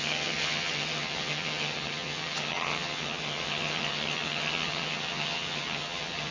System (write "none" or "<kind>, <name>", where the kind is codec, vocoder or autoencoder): vocoder, HiFi-GAN